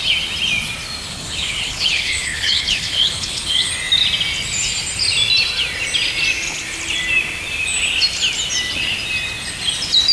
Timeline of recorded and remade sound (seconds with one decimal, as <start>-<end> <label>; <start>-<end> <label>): 0.0-1.1 recorded; 1.1-3.7 remade; 3.7-10.1 recorded